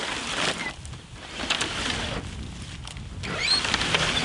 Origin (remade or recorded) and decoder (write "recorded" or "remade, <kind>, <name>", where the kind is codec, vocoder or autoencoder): recorded